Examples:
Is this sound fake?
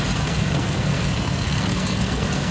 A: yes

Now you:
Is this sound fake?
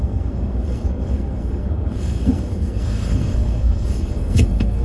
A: yes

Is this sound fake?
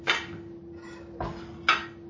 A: no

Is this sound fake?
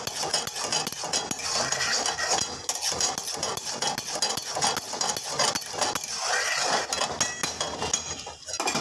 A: no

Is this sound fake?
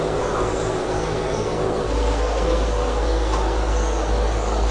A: yes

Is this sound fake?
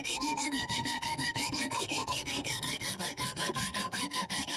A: yes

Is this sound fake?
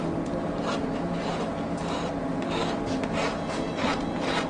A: no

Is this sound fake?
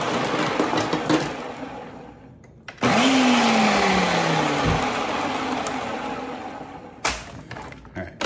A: no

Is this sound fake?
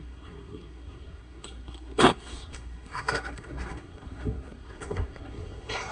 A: yes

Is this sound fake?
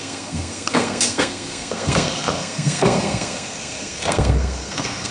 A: yes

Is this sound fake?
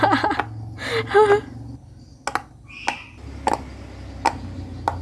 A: no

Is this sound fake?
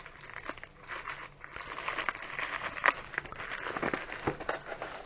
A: no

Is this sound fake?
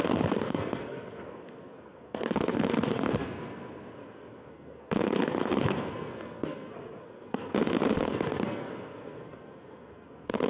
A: yes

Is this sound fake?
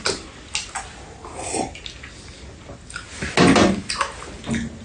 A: no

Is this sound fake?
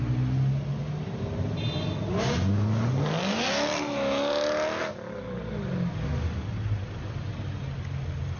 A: no